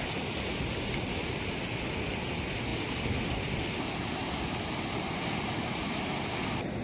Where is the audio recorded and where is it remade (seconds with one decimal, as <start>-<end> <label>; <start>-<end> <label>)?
0.0-6.8 recorded